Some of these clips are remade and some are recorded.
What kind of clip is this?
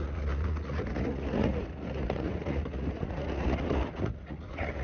remade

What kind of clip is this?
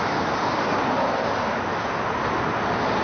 recorded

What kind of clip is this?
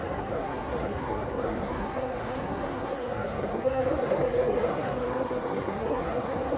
remade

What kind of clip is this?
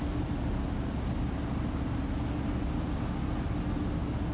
recorded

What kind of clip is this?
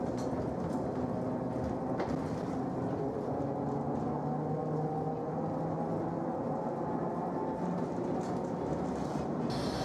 recorded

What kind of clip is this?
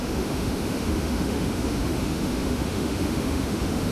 remade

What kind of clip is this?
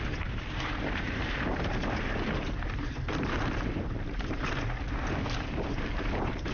remade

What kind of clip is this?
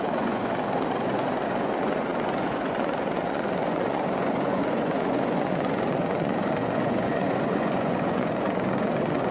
remade